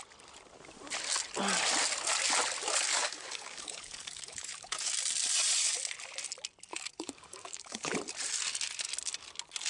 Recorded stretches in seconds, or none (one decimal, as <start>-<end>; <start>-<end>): 0.0-2.9; 4.9-6.7; 7.9-9.7